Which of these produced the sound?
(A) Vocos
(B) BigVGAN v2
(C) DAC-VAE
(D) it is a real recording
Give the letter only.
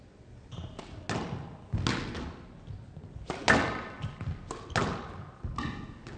D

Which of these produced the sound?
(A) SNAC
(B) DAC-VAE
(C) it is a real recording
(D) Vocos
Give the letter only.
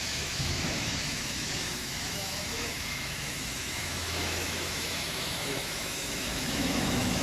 B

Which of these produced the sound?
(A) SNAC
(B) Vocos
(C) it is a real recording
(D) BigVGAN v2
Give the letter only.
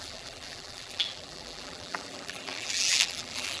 D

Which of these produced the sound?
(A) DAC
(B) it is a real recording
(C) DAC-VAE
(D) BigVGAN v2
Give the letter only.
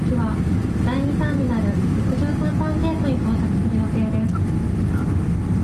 B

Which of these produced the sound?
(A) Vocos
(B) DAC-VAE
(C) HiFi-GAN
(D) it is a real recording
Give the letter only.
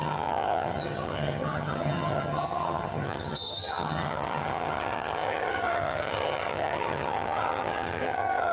C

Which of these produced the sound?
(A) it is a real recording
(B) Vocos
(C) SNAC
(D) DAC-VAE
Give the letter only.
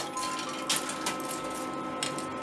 A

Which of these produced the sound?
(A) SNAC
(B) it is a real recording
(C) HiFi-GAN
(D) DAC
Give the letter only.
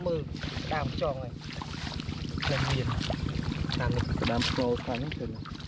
B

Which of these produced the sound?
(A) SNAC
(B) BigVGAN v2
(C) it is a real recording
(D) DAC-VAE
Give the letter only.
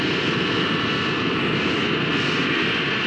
C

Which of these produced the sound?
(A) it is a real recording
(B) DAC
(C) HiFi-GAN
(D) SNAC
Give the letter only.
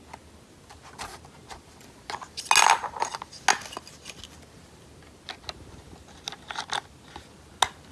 A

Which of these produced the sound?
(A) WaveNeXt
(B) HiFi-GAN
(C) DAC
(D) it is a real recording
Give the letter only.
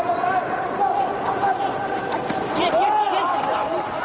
D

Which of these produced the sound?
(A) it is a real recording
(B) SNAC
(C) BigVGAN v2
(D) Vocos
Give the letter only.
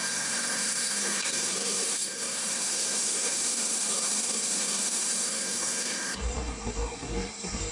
B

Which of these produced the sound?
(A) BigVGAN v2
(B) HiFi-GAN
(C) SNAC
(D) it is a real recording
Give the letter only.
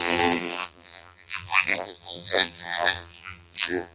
A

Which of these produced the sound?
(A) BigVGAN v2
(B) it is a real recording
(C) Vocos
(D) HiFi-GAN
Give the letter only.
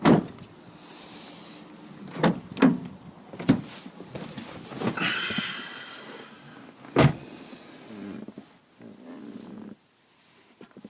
B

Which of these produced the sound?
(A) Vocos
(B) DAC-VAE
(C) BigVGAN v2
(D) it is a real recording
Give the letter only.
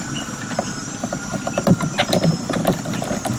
D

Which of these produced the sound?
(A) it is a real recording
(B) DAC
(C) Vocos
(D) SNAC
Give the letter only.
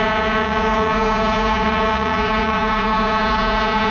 C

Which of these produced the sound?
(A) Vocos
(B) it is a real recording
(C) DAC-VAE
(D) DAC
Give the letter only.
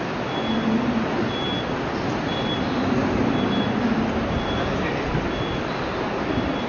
B